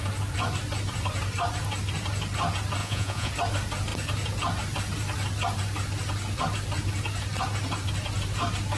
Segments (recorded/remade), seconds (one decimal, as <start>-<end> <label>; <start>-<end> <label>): 0.0-2.8 recorded; 2.8-3.3 remade; 3.3-8.8 recorded